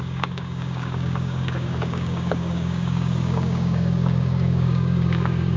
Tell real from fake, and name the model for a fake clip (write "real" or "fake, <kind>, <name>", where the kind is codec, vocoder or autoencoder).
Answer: fake, codec, DAC